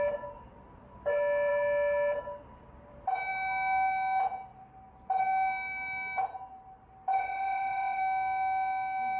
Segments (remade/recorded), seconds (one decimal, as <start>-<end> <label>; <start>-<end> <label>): 0.0-7.1 recorded; 7.1-8.0 remade; 8.0-9.2 recorded